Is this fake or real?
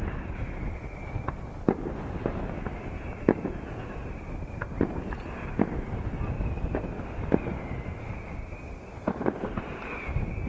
real